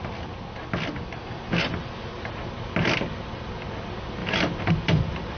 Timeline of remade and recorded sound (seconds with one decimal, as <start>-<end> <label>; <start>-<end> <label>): 0.0-4.2 recorded; 4.2-4.7 remade; 4.7-5.4 recorded